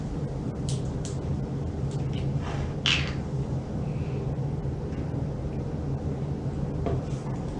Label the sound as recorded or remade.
recorded